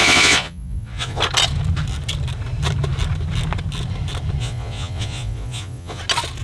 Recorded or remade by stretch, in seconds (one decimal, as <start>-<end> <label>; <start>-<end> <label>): 0.0-1.2 remade; 1.2-4.4 recorded; 4.4-6.0 remade; 6.0-6.4 recorded

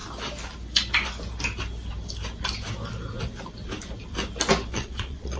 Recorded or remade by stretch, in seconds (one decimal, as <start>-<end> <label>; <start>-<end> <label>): 0.0-4.7 recorded; 4.7-5.4 remade

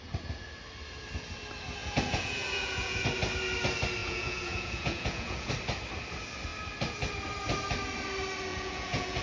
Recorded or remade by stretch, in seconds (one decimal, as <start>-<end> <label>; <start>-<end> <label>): 0.0-1.8 recorded; 1.8-3.0 remade; 3.0-4.0 recorded; 4.0-5.5 remade; 5.5-8.5 recorded; 8.5-9.2 remade

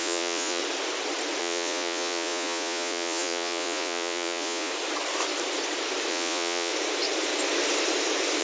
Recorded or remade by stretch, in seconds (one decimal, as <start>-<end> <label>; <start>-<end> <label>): 0.0-0.6 remade; 0.6-1.4 recorded; 1.4-4.7 remade; 4.7-6.1 recorded; 6.1-6.7 remade; 6.7-8.4 recorded

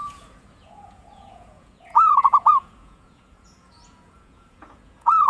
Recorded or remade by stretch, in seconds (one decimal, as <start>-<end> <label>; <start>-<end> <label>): 0.0-5.3 remade

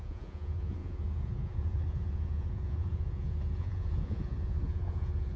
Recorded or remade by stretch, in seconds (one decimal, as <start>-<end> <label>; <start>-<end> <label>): 0.0-5.4 remade

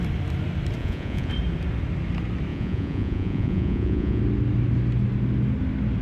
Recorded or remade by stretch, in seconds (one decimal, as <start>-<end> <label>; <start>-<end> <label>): 0.0-0.8 recorded; 0.8-1.3 remade; 1.3-2.5 recorded; 2.5-4.2 remade; 4.2-6.0 recorded

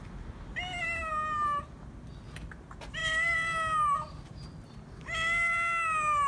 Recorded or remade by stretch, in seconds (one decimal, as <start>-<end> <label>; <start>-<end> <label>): 0.0-6.3 recorded